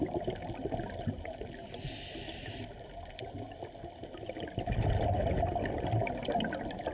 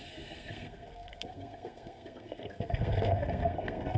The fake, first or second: second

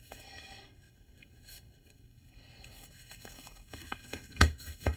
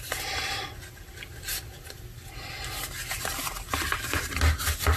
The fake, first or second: first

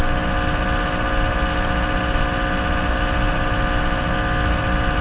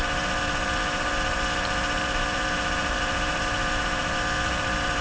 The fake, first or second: second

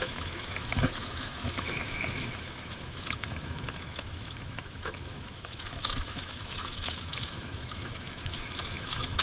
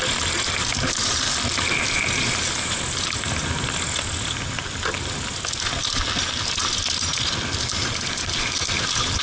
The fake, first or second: first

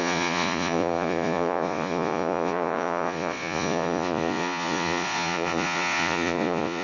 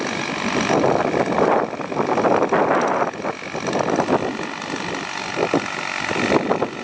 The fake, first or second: first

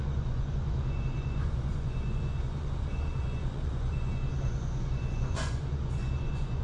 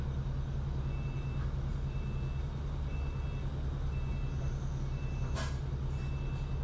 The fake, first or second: first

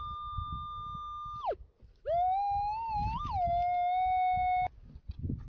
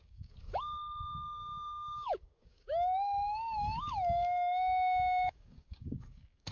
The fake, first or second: second